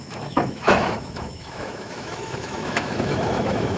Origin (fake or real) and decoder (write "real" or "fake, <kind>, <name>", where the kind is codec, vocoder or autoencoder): fake, autoencoder, DAC-VAE